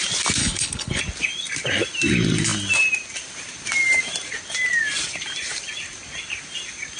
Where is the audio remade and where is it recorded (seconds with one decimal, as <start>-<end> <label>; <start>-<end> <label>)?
0.0-0.4 recorded; 0.4-1.0 remade; 1.0-7.0 recorded